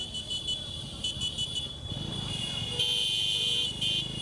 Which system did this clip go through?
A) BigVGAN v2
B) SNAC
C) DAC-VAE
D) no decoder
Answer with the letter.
D